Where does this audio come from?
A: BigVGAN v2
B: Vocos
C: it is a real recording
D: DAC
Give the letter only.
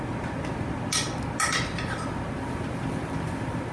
C